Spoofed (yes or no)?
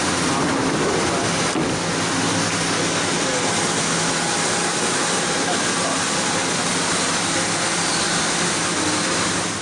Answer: no